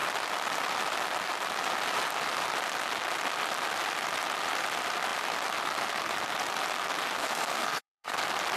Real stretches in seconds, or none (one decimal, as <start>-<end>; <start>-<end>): 0.0-7.2; 8.2-8.6

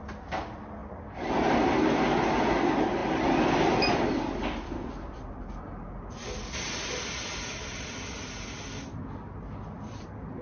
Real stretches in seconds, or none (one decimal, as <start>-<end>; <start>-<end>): 0.0-10.4

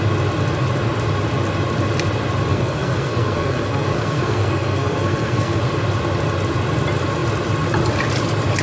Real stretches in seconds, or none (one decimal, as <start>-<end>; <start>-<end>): 0.0-2.5; 5.6-8.6

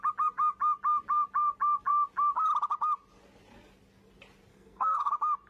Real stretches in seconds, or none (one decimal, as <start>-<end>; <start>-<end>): 0.0-4.5; 5.1-5.5

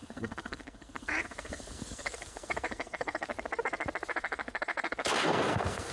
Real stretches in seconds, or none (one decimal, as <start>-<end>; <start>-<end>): 3.3-4.1